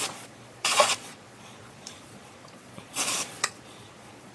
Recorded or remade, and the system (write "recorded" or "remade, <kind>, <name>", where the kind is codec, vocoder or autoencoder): remade, vocoder, Vocos